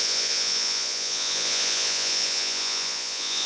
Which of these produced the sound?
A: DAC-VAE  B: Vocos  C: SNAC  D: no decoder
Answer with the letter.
B